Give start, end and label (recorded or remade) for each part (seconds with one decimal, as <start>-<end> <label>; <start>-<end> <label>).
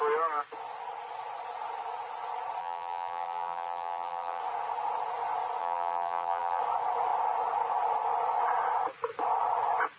0.0-2.6 recorded; 2.6-4.4 remade; 4.4-5.6 recorded; 5.6-6.6 remade; 6.6-10.0 recorded